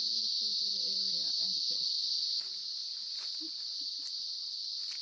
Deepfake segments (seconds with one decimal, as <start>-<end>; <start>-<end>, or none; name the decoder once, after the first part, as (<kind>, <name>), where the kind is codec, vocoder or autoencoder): none